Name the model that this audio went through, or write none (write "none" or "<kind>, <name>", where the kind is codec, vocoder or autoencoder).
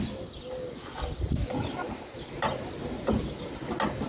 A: none